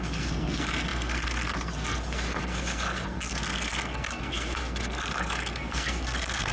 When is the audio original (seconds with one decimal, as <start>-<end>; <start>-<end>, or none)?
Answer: none